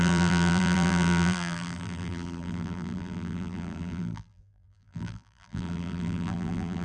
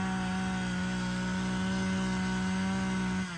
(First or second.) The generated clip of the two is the first